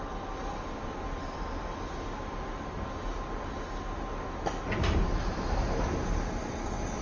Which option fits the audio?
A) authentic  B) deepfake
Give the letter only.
A